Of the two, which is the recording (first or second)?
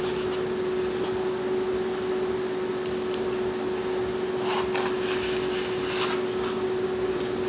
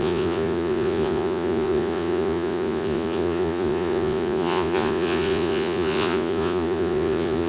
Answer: first